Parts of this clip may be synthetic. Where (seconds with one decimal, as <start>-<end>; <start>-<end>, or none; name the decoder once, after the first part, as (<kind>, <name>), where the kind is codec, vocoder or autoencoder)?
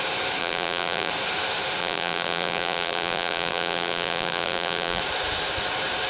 0.4-1.1 (vocoder, BigVGAN v2); 1.8-5.0